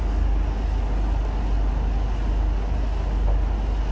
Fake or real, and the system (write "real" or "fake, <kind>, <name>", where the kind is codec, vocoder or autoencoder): real